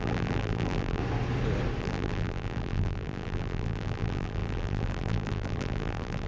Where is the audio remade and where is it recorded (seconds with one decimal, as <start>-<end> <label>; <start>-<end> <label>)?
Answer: 0.0-1.0 remade; 1.0-1.8 recorded; 1.8-6.3 remade